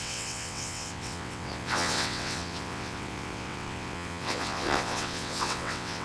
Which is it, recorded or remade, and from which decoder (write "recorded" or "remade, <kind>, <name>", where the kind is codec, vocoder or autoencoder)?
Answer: remade, vocoder, WaveNeXt